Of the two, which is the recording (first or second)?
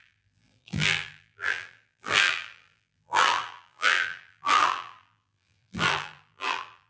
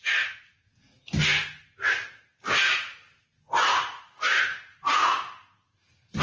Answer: second